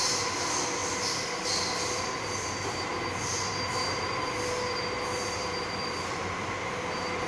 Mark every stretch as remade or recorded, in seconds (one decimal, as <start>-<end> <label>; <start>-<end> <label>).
0.0-7.3 recorded

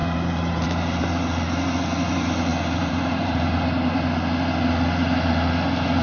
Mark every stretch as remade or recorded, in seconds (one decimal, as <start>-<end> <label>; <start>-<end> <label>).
0.0-1.0 remade; 1.0-2.5 recorded; 2.5-4.1 remade; 4.1-6.0 recorded

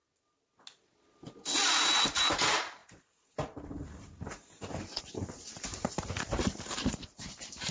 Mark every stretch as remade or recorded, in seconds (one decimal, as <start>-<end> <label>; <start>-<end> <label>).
0.0-2.3 recorded; 2.3-7.7 remade

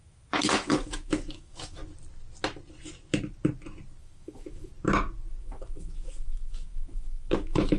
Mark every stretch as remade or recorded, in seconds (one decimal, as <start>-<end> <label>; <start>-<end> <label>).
0.0-1.8 remade; 1.8-4.0 recorded; 4.0-4.7 remade; 4.7-5.4 recorded; 5.4-7.8 remade